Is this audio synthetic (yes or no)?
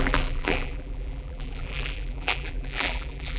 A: yes